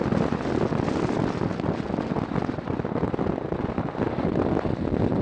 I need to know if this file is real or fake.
real